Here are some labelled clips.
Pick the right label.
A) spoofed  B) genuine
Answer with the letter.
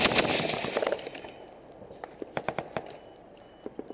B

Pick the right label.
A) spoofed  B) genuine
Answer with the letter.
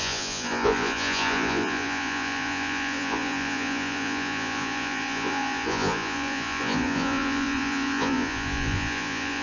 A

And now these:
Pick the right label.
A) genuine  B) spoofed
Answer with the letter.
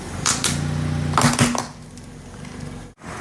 A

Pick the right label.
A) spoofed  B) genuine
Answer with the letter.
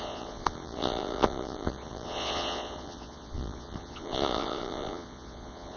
A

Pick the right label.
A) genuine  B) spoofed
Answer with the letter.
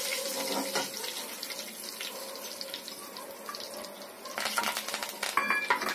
A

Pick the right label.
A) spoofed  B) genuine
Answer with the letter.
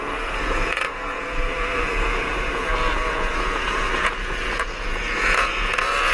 A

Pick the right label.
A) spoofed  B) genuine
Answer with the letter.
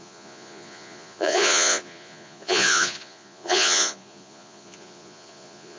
A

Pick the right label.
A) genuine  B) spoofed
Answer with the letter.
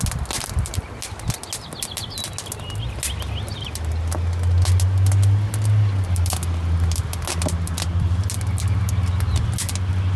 A